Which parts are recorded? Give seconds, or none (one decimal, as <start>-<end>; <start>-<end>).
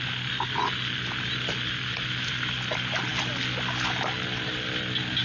0.0-5.2